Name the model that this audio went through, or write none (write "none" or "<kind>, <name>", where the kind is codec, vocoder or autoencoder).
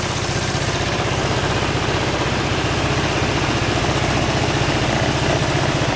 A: none